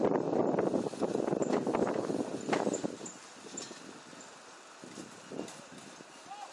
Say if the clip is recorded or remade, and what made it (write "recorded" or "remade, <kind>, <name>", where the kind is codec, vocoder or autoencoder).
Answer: recorded